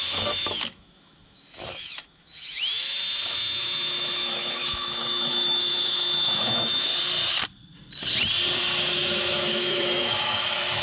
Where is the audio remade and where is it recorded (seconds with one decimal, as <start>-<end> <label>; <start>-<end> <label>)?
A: 0.0-6.9 remade; 6.9-8.8 recorded; 8.8-10.8 remade